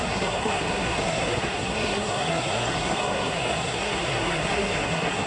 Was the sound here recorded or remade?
remade